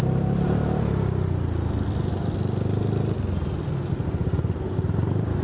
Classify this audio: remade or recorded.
recorded